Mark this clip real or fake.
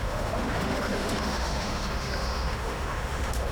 fake